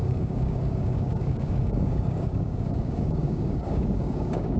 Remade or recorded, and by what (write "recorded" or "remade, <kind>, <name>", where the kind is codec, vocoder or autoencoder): remade, codec, DAC